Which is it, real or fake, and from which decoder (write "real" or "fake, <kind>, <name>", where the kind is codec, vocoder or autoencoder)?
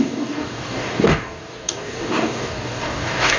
fake, codec, DAC